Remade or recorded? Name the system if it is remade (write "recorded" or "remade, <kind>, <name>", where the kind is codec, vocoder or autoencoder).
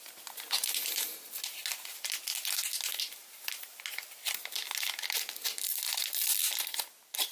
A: recorded